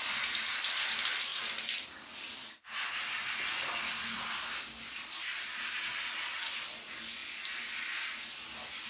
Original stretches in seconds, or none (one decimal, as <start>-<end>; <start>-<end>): 0.0-8.9